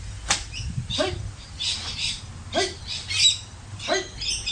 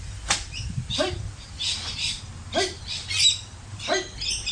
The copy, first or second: second